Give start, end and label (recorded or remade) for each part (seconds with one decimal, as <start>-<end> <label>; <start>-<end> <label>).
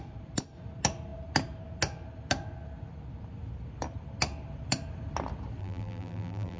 0.0-5.6 recorded; 5.6-6.6 remade